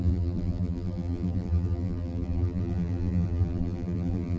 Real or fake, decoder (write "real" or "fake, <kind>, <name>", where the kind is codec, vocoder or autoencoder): fake, vocoder, BigVGAN v2